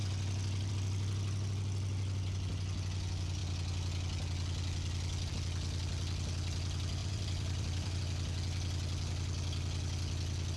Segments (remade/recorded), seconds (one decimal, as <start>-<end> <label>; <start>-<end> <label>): 0.0-7.0 recorded; 7.0-8.0 remade; 8.0-10.6 recorded

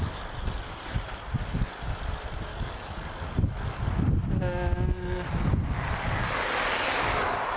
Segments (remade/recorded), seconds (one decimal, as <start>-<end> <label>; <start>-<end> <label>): 0.0-2.5 recorded; 2.5-3.8 remade; 3.8-7.6 recorded

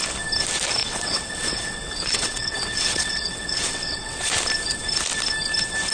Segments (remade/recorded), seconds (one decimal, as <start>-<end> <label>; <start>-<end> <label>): 0.0-0.8 recorded; 0.8-4.3 remade; 4.3-5.9 recorded

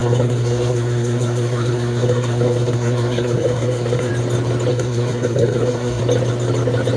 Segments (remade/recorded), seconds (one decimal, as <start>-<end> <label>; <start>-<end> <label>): 0.0-4.1 remade; 4.1-4.7 recorded; 4.7-6.0 remade; 6.0-7.0 recorded

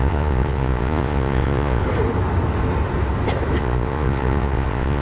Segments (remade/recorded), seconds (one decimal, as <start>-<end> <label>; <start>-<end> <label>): 0.0-1.8 remade; 1.8-3.6 recorded; 3.6-5.0 remade

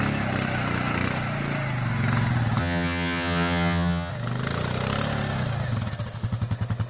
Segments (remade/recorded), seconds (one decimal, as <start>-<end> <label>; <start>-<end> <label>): 0.0-2.6 recorded; 2.6-4.1 remade; 4.1-6.9 recorded

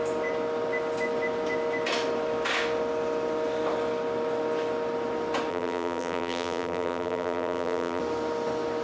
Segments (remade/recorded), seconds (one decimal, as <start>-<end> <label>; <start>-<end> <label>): 0.0-5.5 recorded; 5.5-8.0 remade; 8.0-8.8 recorded

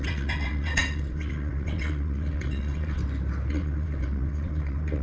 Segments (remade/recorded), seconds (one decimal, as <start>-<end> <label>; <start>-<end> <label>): 0.0-3.0 remade; 3.0-3.5 recorded; 3.5-5.0 remade